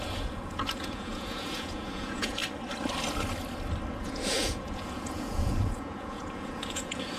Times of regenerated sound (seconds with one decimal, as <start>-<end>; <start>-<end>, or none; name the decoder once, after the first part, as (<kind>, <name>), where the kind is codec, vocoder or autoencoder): 0.0-2.4 (vocoder, Vocos); 3.9-7.2